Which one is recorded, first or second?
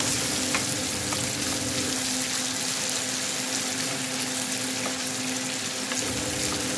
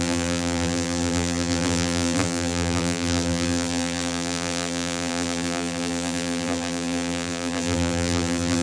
first